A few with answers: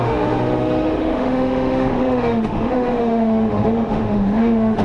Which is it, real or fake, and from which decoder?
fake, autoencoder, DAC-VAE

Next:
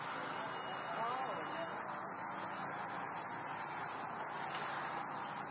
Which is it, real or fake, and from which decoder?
real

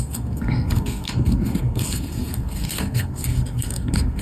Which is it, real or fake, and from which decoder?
fake, codec, SNAC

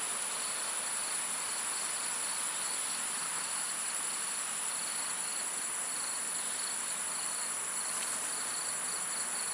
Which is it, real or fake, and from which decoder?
real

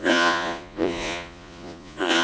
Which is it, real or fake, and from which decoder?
fake, vocoder, Vocos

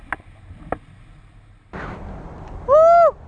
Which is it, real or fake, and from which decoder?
real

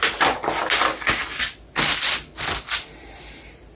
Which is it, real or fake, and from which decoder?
real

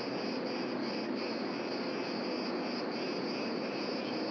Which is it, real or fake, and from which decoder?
real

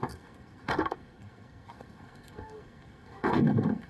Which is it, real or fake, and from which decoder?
fake, codec, SNAC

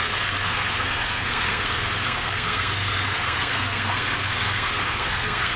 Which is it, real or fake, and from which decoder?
fake, codec, SNAC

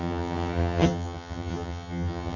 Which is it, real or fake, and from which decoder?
fake, vocoder, HiFi-GAN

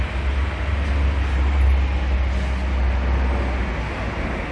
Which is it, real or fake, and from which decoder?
real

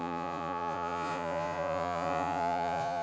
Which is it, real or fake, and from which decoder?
fake, vocoder, Vocos